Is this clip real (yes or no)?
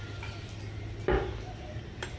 yes